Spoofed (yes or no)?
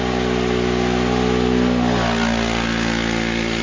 no